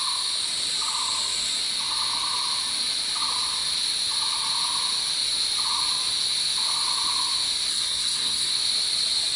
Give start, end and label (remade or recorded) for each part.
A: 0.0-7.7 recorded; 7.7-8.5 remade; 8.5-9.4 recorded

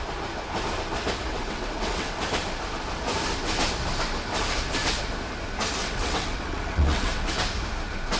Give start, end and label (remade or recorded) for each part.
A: 0.0-1.3 recorded; 1.3-2.2 remade; 2.2-5.8 recorded; 5.8-7.3 remade; 7.3-8.2 recorded